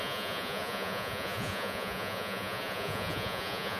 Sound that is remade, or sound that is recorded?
remade